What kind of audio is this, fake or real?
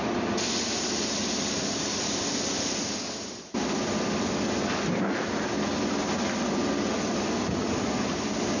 real